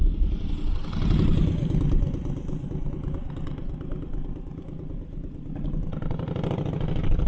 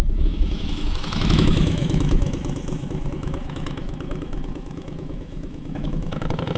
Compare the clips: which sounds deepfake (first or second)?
second